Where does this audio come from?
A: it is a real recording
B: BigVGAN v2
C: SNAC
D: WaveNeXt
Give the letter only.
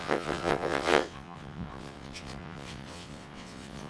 D